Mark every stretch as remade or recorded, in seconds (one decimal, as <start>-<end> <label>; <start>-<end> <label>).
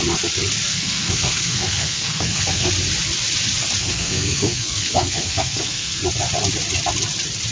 0.0-0.7 recorded; 0.7-2.7 remade; 2.7-3.8 recorded; 3.8-6.0 remade; 6.0-7.5 recorded